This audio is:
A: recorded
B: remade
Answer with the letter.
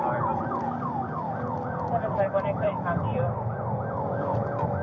B